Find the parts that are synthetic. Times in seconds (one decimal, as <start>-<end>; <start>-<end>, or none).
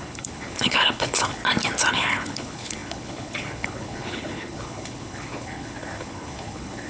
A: 0.0-1.4; 1.9-6.9